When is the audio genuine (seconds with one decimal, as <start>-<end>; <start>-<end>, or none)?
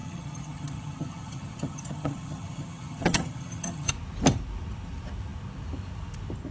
3.9-6.5